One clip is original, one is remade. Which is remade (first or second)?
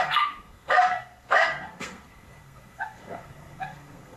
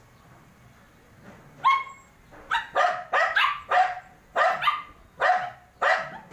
first